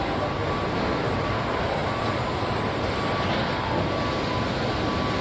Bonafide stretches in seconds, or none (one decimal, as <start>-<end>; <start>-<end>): 0.0-5.2

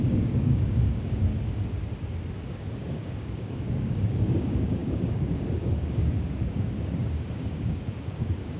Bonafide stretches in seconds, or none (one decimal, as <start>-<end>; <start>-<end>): 1.3-2.5

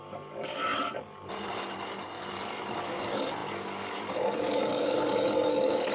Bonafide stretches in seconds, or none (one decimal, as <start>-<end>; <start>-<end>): none

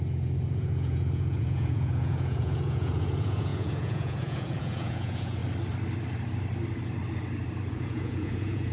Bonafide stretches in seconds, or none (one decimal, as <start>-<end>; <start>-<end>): 5.4-7.7

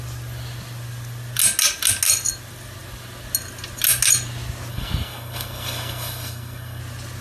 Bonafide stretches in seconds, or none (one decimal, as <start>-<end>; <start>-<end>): 0.0-4.7; 6.8-7.2

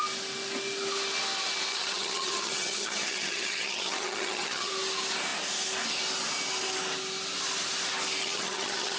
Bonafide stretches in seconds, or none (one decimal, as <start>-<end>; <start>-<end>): 0.0-1.7; 4.7-8.2

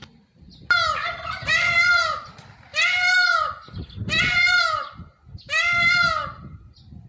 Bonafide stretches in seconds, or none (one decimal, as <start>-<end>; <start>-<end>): 0.0-1.0; 1.9-2.7; 4.6-7.1

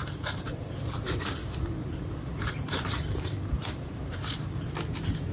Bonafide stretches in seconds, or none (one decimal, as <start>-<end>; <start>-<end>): 0.8-1.4; 4.6-5.3